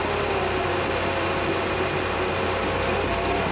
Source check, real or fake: real